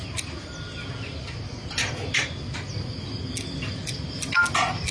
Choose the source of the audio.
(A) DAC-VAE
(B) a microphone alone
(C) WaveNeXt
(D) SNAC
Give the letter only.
B